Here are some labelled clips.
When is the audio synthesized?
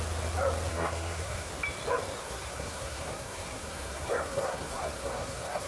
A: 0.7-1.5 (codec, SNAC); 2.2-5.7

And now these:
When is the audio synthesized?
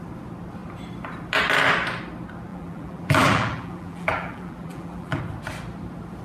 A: 2.5-5.2 (vocoder, BigVGAN v2)